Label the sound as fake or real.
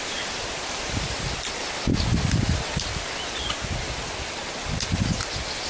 real